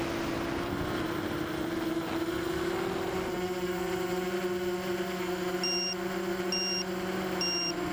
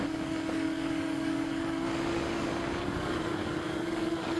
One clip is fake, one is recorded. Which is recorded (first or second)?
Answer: first